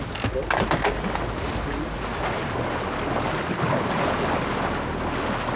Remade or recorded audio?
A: recorded